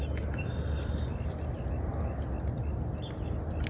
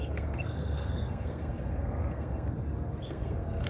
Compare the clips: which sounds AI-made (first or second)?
second